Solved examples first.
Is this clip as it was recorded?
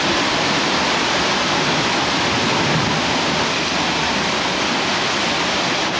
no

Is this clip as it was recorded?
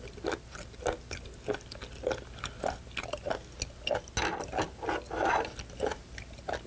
yes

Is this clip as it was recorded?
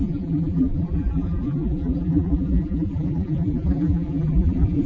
no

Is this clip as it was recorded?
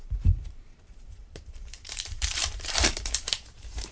no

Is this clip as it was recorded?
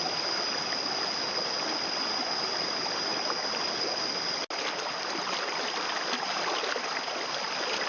yes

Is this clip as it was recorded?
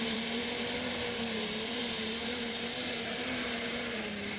no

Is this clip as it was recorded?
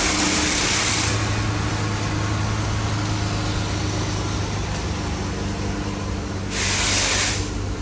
yes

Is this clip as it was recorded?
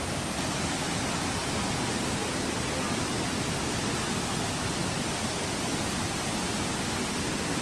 yes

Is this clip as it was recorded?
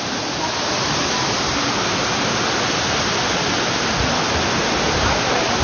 yes